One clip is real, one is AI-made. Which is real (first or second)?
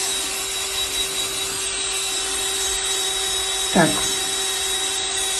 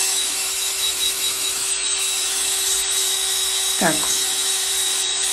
first